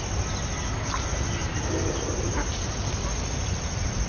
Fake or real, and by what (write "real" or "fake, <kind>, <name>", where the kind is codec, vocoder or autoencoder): real